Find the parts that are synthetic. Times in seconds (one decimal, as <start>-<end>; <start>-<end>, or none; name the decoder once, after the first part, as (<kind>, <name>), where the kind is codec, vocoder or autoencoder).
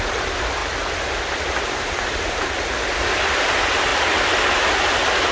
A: none